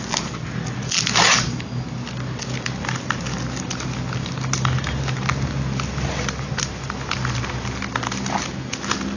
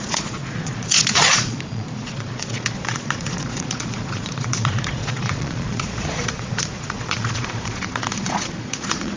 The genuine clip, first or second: first